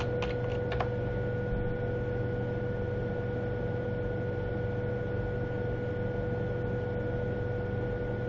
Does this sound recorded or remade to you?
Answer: recorded